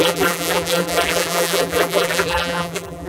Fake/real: fake